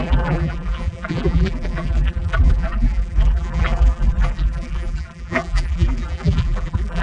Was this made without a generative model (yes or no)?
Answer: no